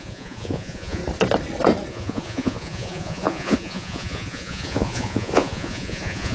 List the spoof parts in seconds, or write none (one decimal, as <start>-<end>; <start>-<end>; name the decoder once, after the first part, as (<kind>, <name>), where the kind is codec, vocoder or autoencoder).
0.0-1.0 (vocoder, Vocos); 1.9-6.3